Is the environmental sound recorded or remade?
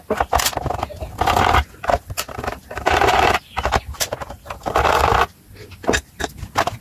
remade